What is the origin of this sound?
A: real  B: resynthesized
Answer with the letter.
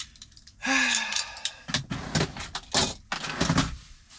A